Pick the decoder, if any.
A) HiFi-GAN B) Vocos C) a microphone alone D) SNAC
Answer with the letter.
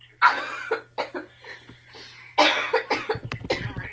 C